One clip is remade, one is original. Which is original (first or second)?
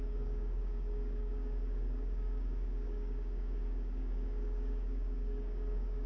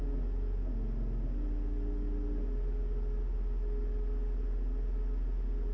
second